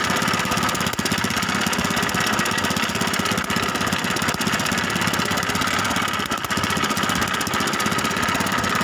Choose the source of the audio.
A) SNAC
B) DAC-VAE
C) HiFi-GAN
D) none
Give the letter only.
D